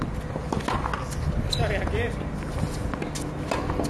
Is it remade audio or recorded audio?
recorded